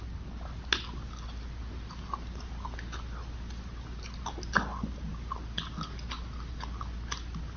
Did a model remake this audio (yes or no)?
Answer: no